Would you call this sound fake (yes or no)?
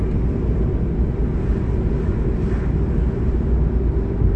no